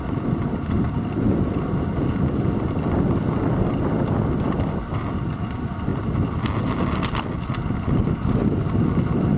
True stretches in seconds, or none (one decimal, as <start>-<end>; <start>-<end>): 0.0-9.4